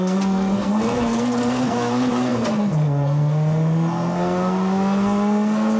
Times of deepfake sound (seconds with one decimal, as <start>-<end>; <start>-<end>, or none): 0.0-5.8